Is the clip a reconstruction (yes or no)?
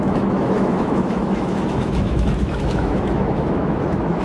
yes